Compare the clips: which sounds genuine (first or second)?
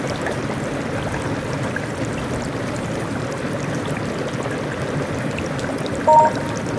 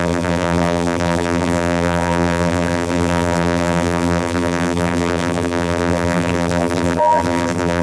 first